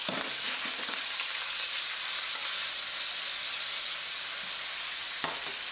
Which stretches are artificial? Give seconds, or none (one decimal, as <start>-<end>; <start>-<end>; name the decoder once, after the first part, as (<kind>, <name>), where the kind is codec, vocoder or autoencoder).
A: none